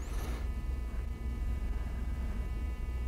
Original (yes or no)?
no